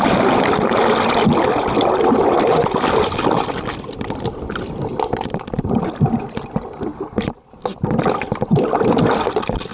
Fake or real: real